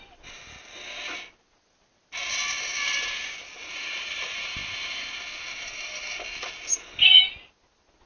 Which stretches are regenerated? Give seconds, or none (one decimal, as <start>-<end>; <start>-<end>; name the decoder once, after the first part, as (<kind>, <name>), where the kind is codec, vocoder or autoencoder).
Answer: none